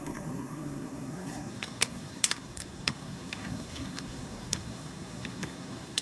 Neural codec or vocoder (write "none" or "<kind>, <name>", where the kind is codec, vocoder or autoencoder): codec, SNAC